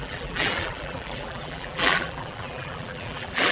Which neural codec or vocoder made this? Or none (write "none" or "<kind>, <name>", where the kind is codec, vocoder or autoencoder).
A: vocoder, BigVGAN v2